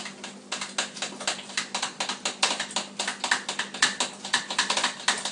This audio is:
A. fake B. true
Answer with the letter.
B